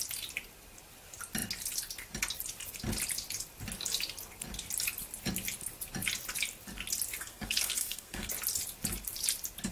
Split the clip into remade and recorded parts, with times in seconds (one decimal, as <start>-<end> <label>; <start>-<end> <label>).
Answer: 0.0-7.2 recorded; 7.2-8.3 remade; 8.3-9.7 recorded

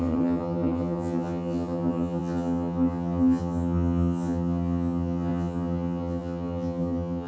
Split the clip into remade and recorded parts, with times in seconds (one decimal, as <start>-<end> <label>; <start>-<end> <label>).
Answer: 0.0-7.3 remade

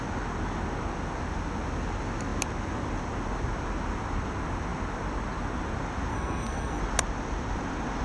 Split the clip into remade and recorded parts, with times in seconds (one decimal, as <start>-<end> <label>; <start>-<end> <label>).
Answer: 0.0-6.1 recorded; 6.1-6.8 remade; 6.8-8.0 recorded